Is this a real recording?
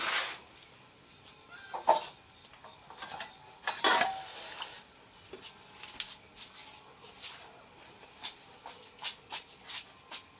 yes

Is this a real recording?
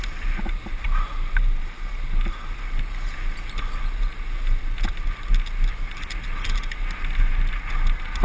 yes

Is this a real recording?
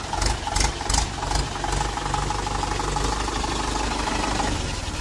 yes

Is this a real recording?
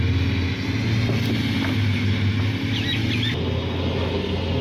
yes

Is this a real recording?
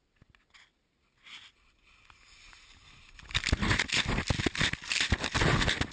yes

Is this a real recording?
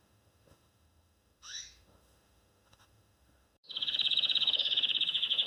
no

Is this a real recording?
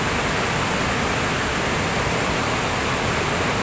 yes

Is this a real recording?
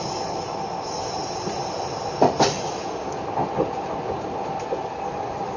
yes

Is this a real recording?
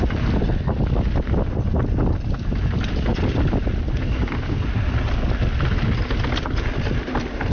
yes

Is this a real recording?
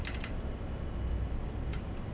no